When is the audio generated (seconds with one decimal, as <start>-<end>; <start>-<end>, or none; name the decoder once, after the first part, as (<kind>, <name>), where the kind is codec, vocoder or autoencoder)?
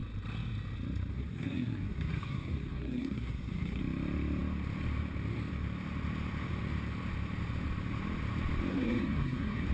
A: 1.1-3.8 (codec, SNAC); 8.7-9.7